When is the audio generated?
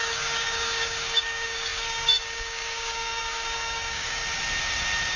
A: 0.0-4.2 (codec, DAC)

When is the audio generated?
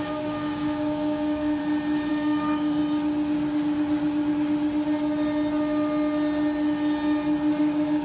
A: 0.0-1.6 (codec, DAC); 2.1-2.8; 7.6-8.0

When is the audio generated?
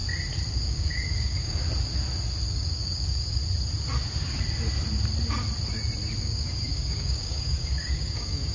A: 0.5-1.6 (codec, DAC); 2.5-3.4; 6.2-8.5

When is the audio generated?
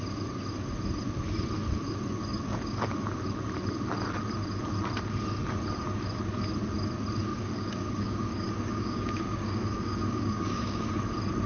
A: 7.3-10.9 (codec, DAC)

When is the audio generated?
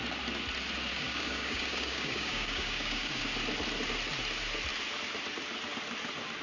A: 0.9-3.2 (codec, DAC)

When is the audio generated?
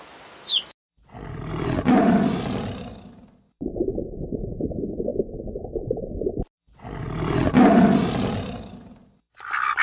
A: none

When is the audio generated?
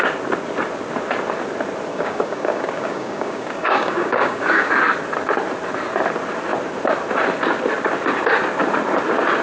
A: 1.9-4.7 (codec, DAC)